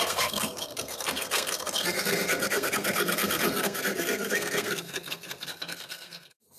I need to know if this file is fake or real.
fake